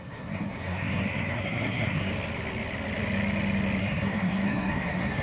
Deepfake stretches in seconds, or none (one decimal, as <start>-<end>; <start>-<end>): 0.0-2.1; 3.8-5.2